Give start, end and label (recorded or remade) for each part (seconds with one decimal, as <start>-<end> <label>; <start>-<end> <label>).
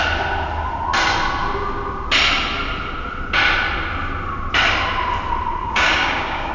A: 0.0-5.6 recorded; 5.6-6.5 remade